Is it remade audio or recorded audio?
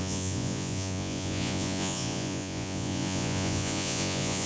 remade